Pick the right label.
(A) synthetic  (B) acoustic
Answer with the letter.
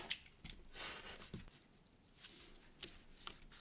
B